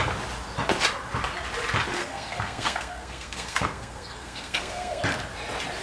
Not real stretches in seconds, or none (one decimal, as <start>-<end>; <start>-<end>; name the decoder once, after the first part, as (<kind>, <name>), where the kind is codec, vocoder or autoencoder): 2.0-5.0 (codec, SNAC)